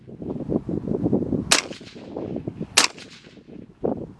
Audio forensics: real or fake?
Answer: real